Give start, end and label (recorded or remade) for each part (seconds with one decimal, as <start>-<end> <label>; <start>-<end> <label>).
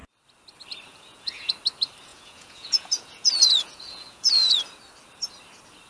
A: 0.0-0.9 recorded; 0.9-1.5 remade; 1.5-2.1 recorded; 2.1-4.8 remade; 4.8-5.9 recorded